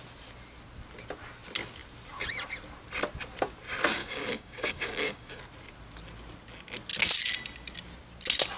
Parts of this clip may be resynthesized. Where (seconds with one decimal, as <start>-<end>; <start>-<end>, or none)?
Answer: 4.0-5.4